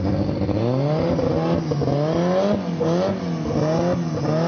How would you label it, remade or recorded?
recorded